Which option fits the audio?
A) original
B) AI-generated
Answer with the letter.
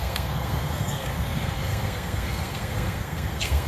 B